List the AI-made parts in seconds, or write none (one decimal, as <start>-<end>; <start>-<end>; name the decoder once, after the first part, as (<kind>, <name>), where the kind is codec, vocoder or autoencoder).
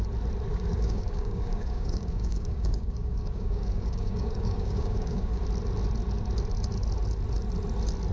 0.5-5.4 (codec, DAC)